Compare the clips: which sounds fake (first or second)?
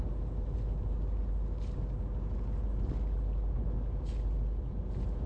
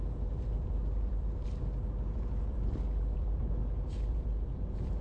second